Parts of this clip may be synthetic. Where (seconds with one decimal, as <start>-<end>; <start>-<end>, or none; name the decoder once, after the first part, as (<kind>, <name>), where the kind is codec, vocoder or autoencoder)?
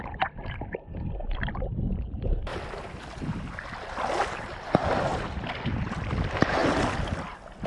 none